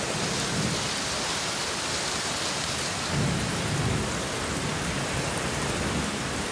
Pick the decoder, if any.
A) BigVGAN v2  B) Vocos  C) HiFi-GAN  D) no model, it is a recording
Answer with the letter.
A